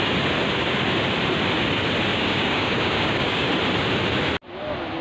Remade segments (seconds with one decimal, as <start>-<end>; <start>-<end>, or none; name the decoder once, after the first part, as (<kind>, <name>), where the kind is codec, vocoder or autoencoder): 2.1-3.5 (codec, DAC)